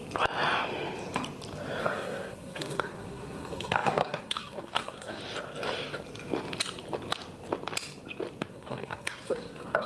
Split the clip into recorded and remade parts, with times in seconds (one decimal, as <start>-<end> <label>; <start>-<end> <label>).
0.0-1.8 recorded; 1.8-5.2 remade; 5.2-8.5 recorded; 8.5-9.9 remade

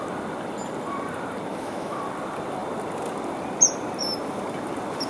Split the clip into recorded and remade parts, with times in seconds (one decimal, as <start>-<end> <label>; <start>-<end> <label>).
0.0-1.5 recorded; 1.5-2.0 remade; 2.0-5.1 recorded